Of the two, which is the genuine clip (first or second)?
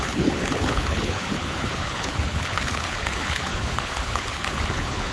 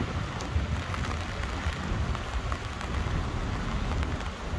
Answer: second